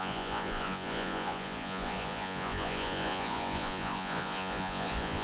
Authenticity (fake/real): fake